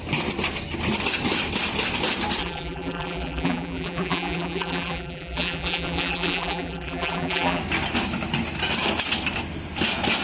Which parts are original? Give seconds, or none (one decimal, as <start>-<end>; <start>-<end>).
0.0-2.4; 7.6-10.2